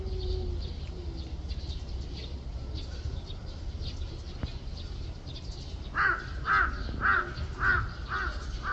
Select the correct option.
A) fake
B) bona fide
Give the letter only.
B